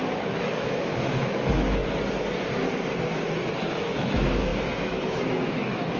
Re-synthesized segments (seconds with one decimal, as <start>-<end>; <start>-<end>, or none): 0.0-1.8; 3.5-6.0